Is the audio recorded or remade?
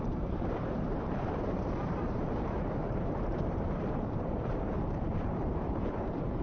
remade